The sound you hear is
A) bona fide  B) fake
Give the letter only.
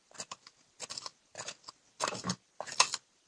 A